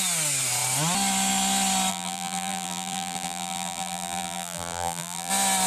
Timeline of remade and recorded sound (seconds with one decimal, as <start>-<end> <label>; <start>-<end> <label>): 0.0-1.9 recorded; 1.9-5.3 remade; 5.3-5.7 recorded